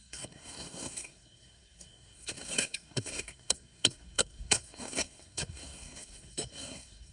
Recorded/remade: remade